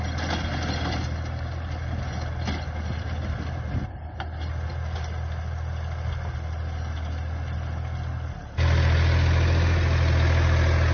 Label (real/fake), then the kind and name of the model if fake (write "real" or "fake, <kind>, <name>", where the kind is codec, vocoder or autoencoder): real